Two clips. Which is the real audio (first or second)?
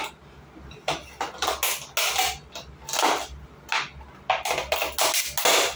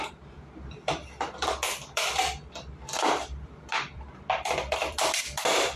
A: first